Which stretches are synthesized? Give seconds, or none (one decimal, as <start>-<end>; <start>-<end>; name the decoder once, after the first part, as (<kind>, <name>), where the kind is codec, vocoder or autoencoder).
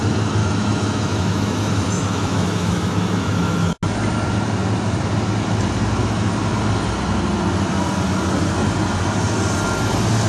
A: 0.4-3.8 (autoencoder, DAC-VAE)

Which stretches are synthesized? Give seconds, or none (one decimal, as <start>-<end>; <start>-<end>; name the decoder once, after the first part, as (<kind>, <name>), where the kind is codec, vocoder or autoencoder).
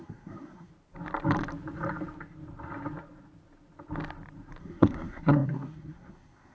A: 0.0-0.7 (codec, SNAC); 4.6-6.5